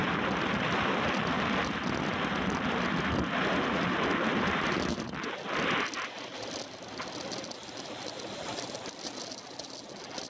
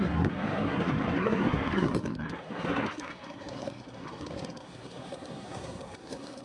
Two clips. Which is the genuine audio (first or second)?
first